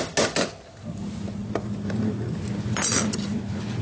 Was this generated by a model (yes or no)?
no